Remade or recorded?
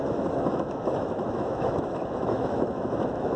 remade